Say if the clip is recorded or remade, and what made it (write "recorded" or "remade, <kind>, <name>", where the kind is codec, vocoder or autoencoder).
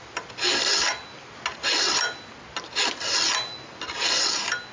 recorded